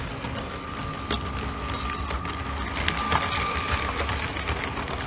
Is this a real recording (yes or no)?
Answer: yes